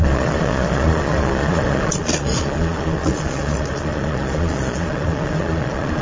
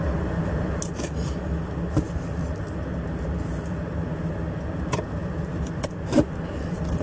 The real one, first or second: second